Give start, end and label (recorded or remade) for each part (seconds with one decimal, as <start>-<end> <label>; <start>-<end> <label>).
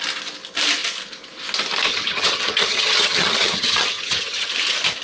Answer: 0.0-1.9 recorded; 1.9-4.5 remade; 4.5-5.0 recorded